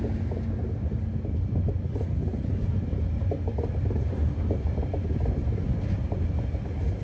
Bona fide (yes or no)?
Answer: yes